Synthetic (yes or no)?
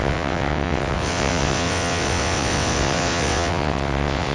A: yes